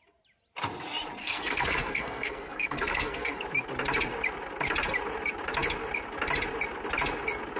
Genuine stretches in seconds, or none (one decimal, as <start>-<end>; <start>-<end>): 0.0-1.2; 3.4-7.6